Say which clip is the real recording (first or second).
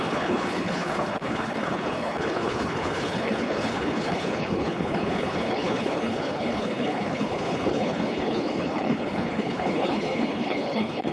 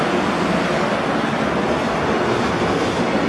second